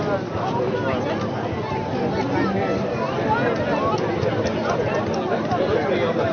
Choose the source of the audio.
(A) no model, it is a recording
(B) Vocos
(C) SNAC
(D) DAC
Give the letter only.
A